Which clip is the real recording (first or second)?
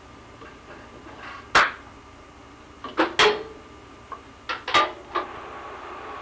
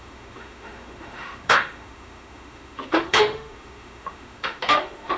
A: first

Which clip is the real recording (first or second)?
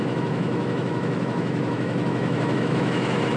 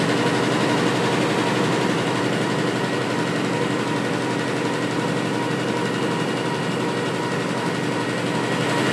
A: second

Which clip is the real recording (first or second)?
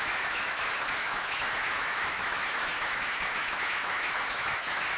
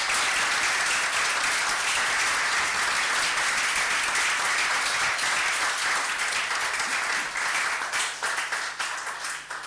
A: second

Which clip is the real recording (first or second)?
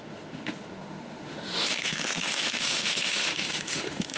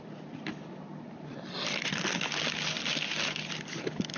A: second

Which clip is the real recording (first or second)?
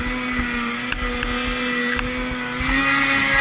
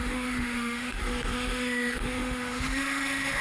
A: first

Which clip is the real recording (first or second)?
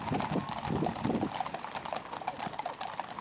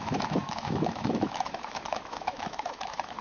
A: first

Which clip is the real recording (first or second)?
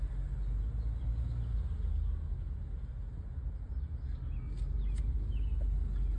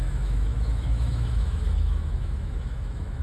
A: first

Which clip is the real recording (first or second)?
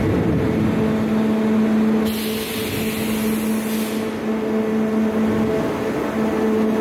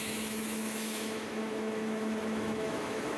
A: first